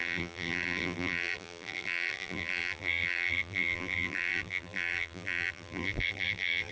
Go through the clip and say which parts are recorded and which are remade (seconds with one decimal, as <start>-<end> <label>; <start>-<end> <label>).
0.0-6.7 remade